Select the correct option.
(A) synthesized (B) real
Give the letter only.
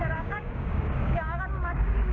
A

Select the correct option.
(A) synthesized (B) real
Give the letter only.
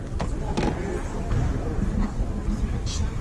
B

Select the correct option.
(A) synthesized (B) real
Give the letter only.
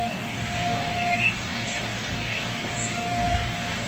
A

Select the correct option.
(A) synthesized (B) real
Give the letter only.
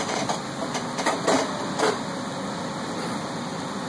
B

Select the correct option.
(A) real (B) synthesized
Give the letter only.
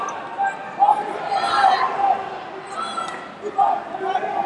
A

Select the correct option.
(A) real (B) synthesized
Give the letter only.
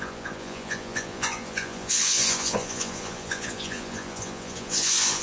B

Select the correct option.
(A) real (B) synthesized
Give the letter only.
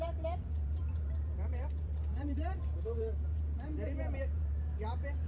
B